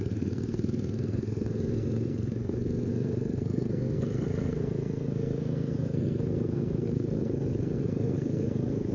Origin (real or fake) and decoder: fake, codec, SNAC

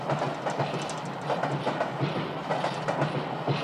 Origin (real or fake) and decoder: real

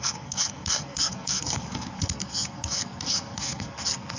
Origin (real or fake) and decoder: fake, codec, SNAC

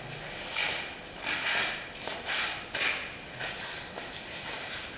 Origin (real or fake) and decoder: real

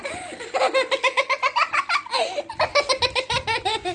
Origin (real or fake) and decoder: real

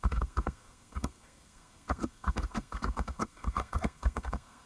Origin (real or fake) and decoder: fake, codec, SNAC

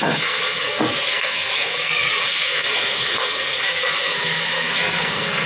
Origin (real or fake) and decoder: fake, codec, SNAC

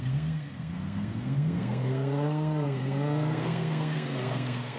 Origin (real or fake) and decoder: fake, codec, SNAC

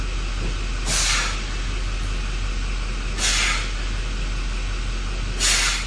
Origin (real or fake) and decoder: real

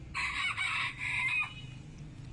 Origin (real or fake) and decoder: real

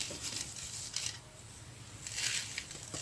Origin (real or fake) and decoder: real